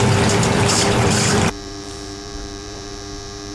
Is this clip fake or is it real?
fake